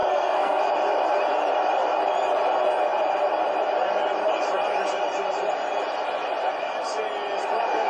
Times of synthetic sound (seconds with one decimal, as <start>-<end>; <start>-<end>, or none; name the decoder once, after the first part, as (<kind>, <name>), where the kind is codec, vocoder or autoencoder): 0.0-0.6 (codec, SNAC)

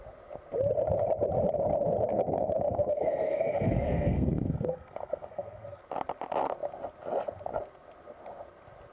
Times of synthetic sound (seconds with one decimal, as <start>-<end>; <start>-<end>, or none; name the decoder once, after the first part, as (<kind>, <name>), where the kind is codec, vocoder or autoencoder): 2.1-5.8 (codec, SNAC)